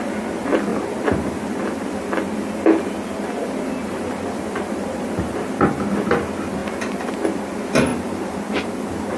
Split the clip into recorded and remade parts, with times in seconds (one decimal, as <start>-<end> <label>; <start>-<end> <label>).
0.0-0.7 recorded; 0.7-2.0 remade; 2.0-3.8 recorded; 3.8-5.4 remade; 5.4-7.9 recorded; 7.9-9.2 remade